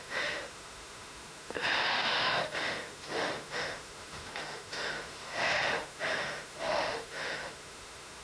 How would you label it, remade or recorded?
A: remade